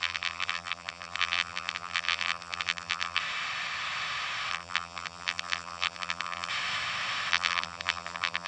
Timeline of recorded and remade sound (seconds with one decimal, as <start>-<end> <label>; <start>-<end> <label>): 0.0-3.2 remade; 3.2-4.5 recorded; 4.5-6.5 remade; 6.5-7.3 recorded; 7.3-8.5 remade